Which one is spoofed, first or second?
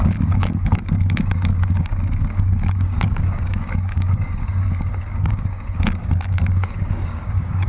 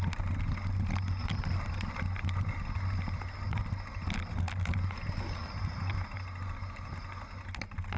first